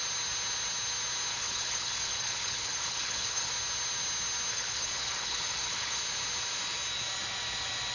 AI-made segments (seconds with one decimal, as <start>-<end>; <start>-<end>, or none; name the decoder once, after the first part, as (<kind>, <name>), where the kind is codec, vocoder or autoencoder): 1.3-3.5 (codec, HILCodec); 4.5-6.0